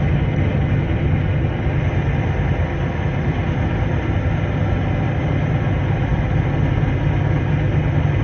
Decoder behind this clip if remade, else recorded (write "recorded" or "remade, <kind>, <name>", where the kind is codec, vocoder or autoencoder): recorded